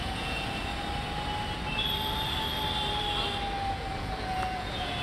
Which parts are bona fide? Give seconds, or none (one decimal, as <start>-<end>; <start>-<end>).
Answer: 0.7-3.7